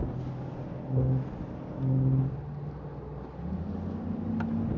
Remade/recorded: recorded